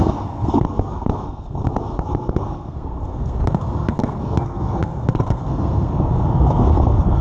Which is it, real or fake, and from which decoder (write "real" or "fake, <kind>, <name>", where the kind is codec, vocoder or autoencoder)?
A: fake, codec, SNAC